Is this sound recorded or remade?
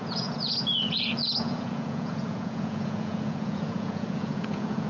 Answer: remade